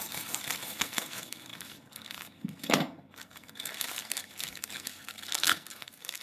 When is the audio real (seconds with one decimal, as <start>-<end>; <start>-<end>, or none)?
none